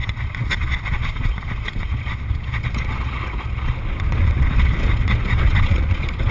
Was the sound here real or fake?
fake